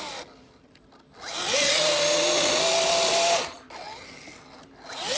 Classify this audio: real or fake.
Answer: real